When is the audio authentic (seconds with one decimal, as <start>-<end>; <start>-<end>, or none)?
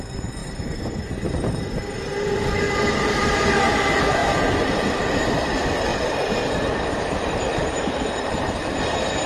0.0-0.4; 3.4-5.9; 8.7-9.3